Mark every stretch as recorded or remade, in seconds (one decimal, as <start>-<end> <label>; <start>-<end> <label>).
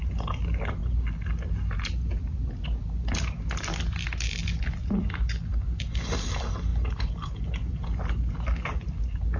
0.0-9.4 recorded